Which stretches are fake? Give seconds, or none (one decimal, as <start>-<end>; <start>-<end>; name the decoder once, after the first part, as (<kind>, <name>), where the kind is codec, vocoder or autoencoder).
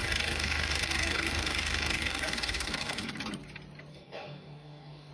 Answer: 0.0-3.1 (codec, DAC); 3.9-5.1